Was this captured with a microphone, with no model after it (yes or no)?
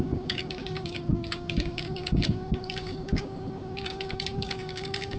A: no